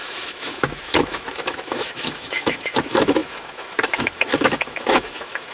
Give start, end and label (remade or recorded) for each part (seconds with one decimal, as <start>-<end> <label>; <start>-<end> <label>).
0.0-5.5 remade